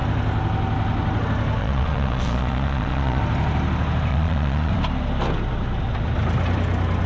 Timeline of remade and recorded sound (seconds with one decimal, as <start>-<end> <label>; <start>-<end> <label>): 0.0-1.6 recorded; 1.6-3.2 remade; 3.2-4.1 recorded; 4.1-4.7 remade; 4.7-7.1 recorded